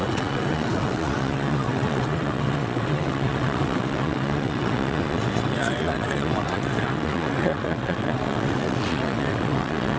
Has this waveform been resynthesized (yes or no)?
yes